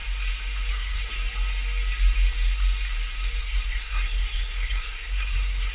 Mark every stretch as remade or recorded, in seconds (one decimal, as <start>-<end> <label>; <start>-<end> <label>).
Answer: 0.0-0.7 recorded; 0.7-1.1 remade; 1.1-3.4 recorded; 3.4-5.7 remade